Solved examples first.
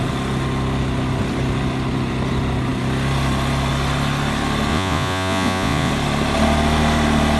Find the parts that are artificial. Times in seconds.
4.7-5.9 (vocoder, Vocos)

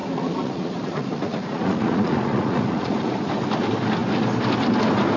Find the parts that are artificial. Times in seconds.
0.0-3.1 (vocoder, Vocos)

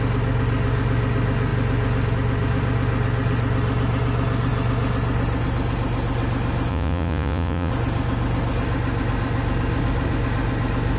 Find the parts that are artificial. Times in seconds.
6.7-7.7 (vocoder, Vocos)

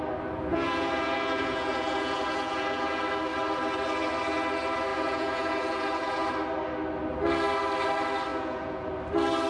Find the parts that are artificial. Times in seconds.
0.5-3.0 (vocoder, Vocos); 4.9-6.3; 8.3-8.9

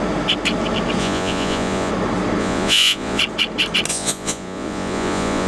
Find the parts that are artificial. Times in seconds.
1.0-1.9 (vocoder, Vocos); 2.4-3.2; 3.9-5.5

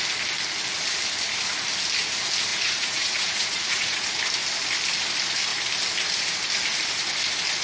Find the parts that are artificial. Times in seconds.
2.5-4.2 (vocoder, Vocos)

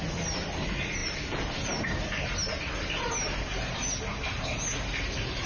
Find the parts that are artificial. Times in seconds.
none